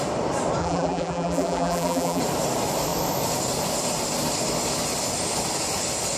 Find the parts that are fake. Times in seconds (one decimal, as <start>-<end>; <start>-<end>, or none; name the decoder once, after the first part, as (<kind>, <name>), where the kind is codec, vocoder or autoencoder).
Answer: 0.6-2.2 (vocoder, BigVGAN v2)

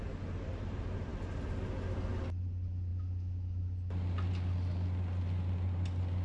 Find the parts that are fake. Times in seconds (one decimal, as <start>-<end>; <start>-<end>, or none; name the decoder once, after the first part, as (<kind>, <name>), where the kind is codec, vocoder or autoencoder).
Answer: none

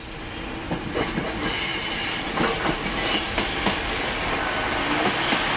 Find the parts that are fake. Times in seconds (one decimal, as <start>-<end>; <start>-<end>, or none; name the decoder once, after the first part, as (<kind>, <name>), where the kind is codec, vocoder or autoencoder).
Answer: none

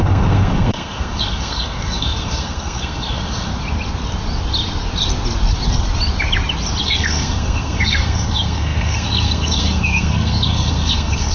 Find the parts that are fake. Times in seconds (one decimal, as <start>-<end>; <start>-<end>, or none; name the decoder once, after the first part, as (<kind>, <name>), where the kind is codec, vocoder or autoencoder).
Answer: 0.0-3.5 (codec, SNAC); 6.8-11.3

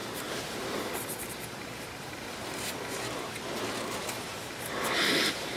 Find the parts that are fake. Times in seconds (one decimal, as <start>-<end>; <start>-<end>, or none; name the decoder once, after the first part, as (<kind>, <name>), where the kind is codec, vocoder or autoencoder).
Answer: 0.0-3.4 (vocoder, BigVGAN v2); 4.3-5.6

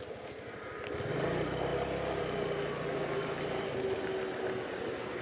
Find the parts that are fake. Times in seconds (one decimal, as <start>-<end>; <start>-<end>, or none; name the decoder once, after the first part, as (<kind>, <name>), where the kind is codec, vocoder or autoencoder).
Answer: none